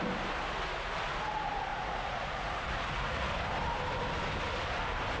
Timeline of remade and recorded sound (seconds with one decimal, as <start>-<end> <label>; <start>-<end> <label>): 0.0-1.7 recorded; 1.7-3.3 remade; 3.3-5.2 recorded

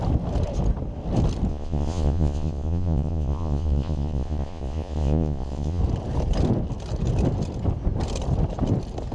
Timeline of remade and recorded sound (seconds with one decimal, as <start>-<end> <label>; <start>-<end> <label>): 0.0-1.5 recorded; 1.5-5.8 remade; 5.8-9.1 recorded

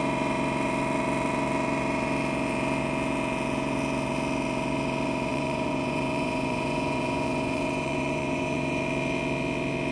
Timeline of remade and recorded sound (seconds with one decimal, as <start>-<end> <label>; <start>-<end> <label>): 0.0-5.3 recorded; 5.3-8.8 remade; 8.8-9.9 recorded

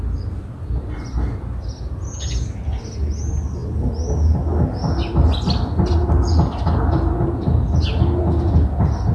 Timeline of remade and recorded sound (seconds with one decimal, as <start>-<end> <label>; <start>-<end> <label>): 0.0-9.1 recorded

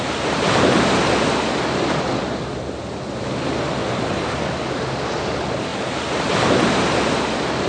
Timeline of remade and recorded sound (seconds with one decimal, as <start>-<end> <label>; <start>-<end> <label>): 0.0-7.7 recorded